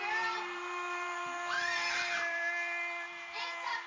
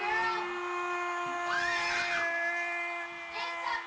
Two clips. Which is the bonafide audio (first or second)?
second